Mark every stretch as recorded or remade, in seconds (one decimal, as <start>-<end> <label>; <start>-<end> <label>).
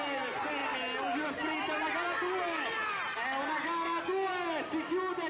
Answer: 0.0-5.3 recorded